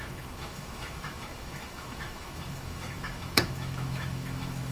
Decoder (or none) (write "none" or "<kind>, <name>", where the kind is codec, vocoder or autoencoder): autoencoder, DAC-VAE